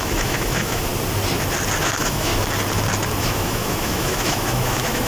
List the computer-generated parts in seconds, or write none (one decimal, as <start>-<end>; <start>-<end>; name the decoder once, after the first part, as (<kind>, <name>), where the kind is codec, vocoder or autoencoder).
0.0-0.9 (autoencoder, DAC-VAE); 1.8-2.3; 3.2-5.1